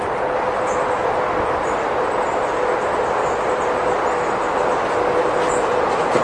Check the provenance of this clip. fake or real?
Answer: real